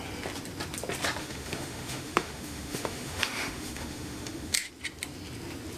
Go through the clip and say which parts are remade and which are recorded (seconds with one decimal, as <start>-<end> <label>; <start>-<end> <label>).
0.0-1.2 recorded; 1.2-4.7 remade; 4.7-5.8 recorded